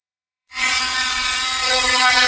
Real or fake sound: fake